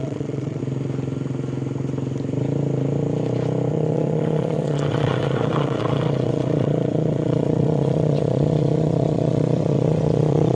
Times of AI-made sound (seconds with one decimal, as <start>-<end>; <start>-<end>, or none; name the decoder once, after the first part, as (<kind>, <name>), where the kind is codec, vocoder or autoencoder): 0.0-0.6 (vocoder, Vocos); 3.7-10.6